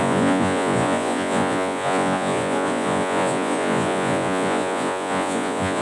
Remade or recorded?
remade